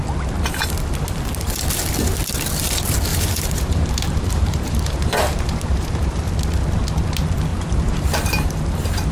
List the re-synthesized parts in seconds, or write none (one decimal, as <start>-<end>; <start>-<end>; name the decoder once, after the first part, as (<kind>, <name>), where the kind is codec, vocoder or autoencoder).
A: 3.1-6.3 (vocoder, BigVGAN v2); 7.5-9.1